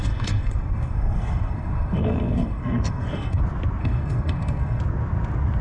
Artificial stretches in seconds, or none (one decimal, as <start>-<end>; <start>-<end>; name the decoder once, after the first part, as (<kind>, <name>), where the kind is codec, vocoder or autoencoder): 0.0-3.4 (codec, SNAC); 3.8-4.8